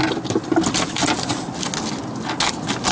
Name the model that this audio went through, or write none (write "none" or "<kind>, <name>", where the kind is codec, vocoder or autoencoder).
none